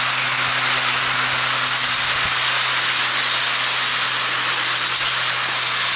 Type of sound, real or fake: real